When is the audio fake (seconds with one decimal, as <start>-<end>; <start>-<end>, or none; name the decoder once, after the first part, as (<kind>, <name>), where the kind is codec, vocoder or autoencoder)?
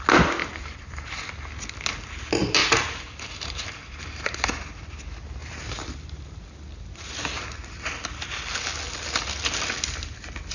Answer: 0.4-1.2 (vocoder, BigVGAN v2); 2.6-4.0; 5.4-6.4